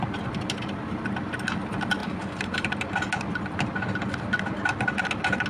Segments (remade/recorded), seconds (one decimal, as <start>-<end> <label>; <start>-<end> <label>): 0.0-2.0 recorded; 2.0-2.8 remade; 2.8-5.5 recorded